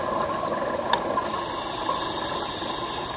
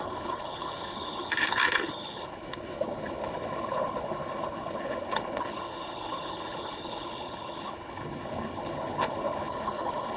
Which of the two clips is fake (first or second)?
second